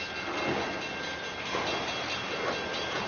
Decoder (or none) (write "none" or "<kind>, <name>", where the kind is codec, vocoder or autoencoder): none